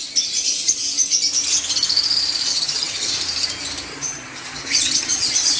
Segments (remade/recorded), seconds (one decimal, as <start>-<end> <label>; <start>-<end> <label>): 0.0-2.5 recorded; 2.5-3.1 remade; 3.1-3.9 recorded; 3.9-5.6 remade